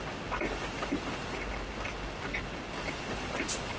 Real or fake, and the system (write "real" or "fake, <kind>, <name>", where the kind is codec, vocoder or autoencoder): real